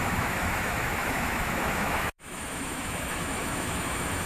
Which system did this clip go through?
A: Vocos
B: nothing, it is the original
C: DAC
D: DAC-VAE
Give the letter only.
D